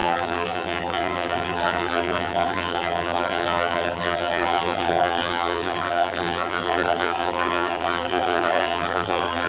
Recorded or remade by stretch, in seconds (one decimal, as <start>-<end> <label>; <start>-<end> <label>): 0.0-9.5 remade